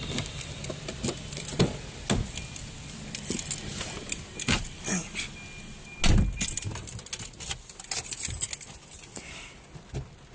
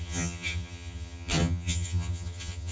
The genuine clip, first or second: first